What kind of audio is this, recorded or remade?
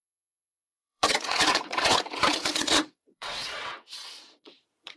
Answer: remade